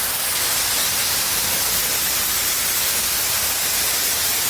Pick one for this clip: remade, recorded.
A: recorded